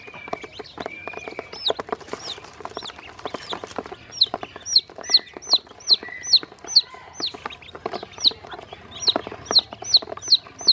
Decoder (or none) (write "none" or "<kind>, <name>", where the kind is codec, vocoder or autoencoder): none